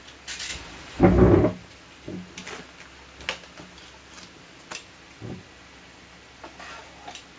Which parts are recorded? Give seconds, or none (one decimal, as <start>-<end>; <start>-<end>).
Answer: 0.0-0.5; 1.0-7.4